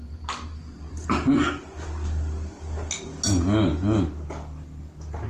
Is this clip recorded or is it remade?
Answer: recorded